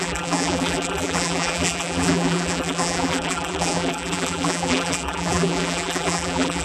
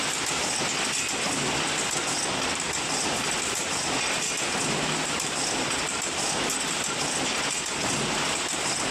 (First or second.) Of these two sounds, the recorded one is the second